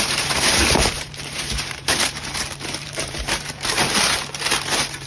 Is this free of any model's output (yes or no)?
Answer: no